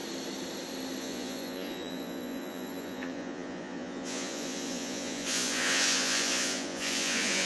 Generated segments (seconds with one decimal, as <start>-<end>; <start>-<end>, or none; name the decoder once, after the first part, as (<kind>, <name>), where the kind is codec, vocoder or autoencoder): 1.0-7.5 (vocoder, Vocos)